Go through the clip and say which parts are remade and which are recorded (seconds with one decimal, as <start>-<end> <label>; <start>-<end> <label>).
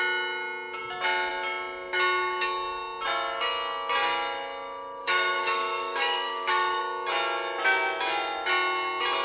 0.0-5.0 recorded; 5.0-6.8 remade; 6.8-9.2 recorded